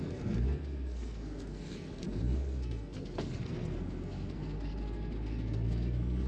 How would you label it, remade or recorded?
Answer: remade